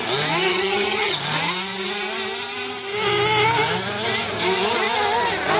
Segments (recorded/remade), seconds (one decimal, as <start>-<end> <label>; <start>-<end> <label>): 0.0-0.5 recorded; 0.5-1.2 remade; 1.2-5.6 recorded